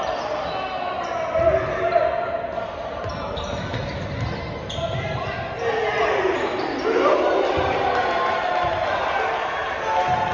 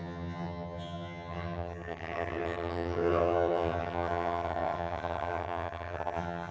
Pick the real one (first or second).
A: first